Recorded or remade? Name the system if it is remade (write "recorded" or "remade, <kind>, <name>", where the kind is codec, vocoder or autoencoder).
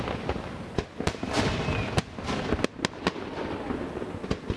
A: recorded